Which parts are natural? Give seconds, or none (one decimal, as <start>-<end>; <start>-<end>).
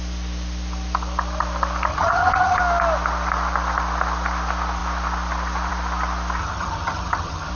0.0-1.9; 2.6-6.4